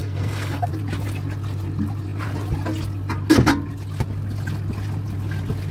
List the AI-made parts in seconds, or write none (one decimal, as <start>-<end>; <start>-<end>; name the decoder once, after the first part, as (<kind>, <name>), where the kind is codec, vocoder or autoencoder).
0.0-0.7 (codec, SNAC)